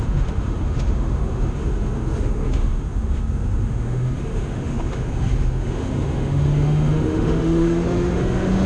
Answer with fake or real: fake